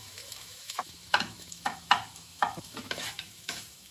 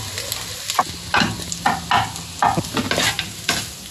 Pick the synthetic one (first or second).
first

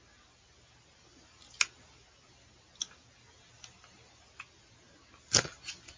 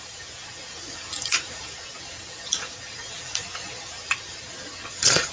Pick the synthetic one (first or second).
second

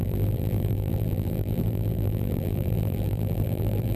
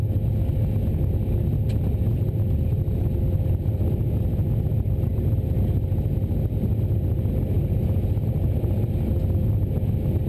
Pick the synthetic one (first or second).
first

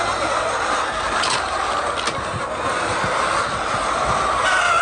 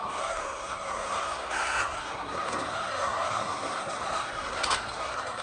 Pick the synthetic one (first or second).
second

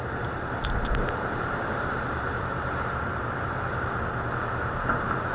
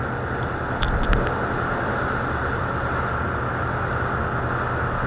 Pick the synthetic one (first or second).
first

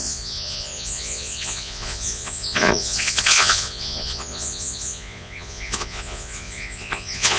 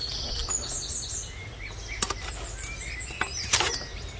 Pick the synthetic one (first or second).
first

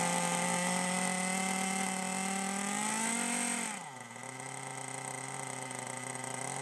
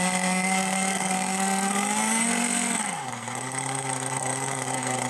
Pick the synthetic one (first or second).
second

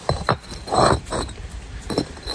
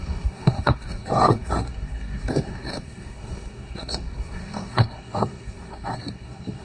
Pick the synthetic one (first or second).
second